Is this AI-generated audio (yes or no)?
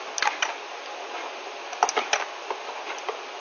no